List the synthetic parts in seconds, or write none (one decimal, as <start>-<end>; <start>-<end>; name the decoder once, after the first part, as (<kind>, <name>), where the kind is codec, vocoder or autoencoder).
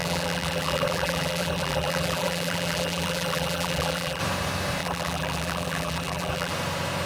0.0-4.2 (vocoder, BigVGAN v2); 4.8-6.5